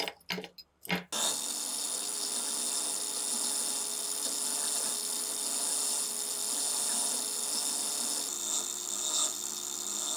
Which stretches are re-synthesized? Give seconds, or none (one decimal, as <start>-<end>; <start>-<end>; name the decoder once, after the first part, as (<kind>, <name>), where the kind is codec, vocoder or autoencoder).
none